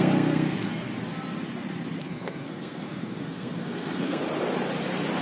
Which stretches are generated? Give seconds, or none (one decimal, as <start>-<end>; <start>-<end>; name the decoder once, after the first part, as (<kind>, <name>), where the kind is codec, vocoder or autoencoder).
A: 0.0-0.9 (codec, SNAC); 2.0-4.2